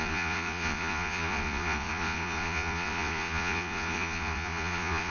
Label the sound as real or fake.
fake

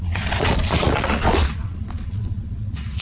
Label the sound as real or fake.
fake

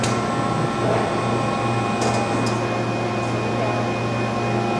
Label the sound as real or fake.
real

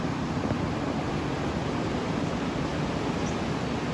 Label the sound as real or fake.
real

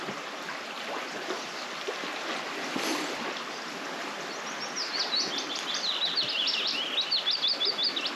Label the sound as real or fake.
real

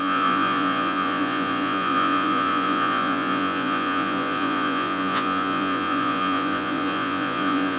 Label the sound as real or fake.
fake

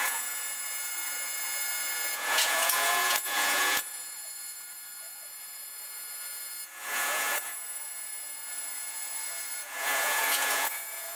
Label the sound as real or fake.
fake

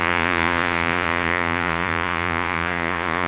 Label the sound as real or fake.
fake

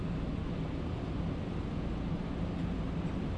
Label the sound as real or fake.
real